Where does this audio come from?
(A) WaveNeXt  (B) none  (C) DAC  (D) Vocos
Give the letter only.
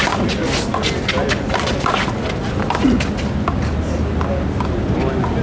B